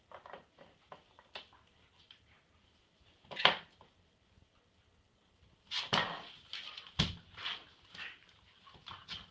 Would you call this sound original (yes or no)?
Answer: yes